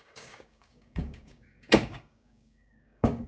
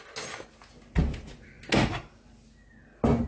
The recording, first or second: second